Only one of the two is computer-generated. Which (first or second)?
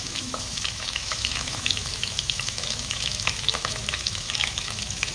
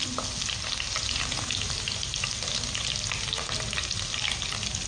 first